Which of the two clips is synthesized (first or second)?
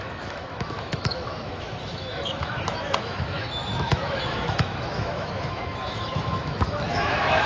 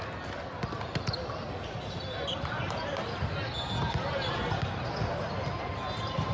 first